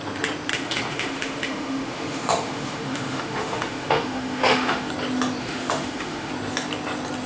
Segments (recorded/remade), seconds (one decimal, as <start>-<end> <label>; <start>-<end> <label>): 0.0-0.5 recorded; 0.5-4.9 remade; 4.9-5.4 recorded; 5.4-6.3 remade; 6.3-7.3 recorded